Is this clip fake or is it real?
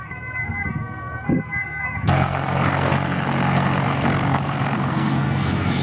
fake